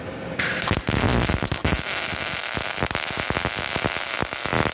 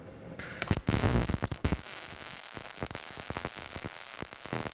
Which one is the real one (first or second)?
first